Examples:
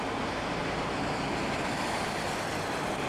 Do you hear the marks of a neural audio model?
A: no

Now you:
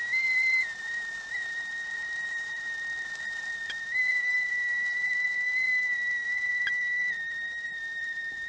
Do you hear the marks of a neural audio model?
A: yes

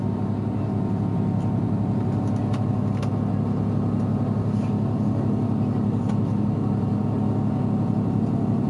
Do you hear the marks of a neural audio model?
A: no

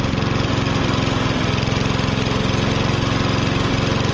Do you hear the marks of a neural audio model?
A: no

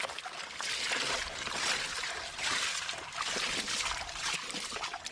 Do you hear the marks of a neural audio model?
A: no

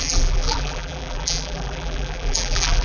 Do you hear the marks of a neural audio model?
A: yes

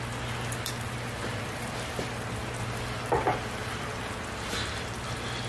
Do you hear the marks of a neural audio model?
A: no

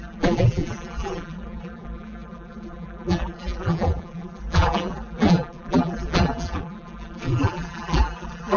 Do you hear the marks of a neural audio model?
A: yes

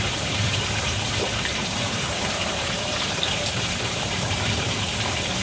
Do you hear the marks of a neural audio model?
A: yes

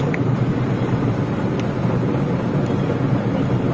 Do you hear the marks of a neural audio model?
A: no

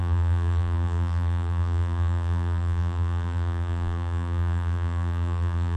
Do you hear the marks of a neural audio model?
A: yes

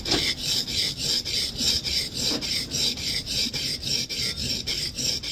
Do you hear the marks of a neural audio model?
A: yes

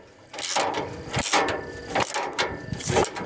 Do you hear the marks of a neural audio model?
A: no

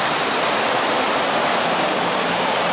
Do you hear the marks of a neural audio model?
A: yes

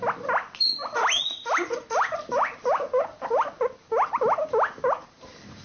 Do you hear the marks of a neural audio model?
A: no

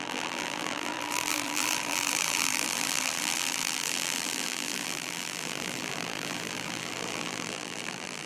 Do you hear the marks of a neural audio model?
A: yes